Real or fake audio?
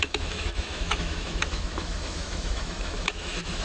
fake